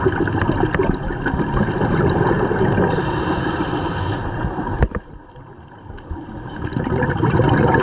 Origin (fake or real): real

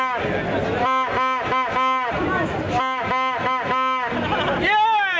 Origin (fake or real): real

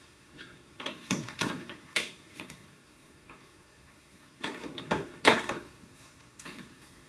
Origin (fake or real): fake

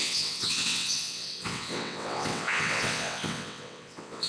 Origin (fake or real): fake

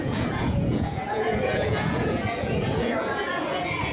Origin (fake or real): fake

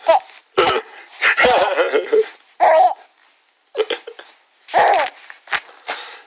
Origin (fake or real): real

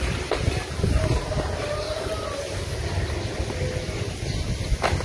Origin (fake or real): real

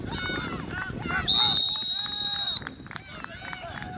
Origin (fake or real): real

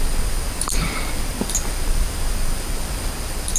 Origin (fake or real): fake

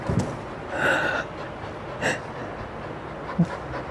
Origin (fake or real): real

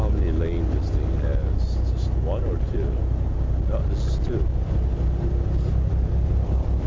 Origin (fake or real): real